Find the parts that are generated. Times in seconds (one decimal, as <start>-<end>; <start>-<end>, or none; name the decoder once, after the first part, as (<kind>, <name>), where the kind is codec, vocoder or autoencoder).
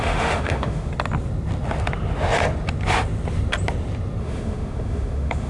0.0-0.9 (autoencoder, DAC-VAE); 4.2-5.5